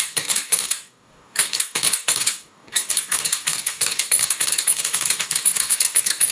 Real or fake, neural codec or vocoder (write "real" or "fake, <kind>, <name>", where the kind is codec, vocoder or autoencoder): fake, codec, DAC